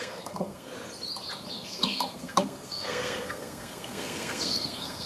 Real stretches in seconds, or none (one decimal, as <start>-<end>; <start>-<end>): 0.7-1.5